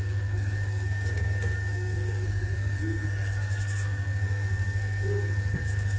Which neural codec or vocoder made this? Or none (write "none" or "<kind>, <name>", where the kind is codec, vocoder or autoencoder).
codec, SNAC